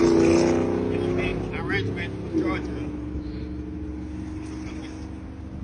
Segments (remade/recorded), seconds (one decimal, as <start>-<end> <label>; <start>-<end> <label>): 0.0-5.6 recorded